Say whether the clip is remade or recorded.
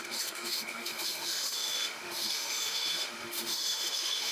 remade